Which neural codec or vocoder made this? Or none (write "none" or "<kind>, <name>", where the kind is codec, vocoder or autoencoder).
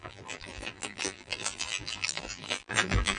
vocoder, BigVGAN v2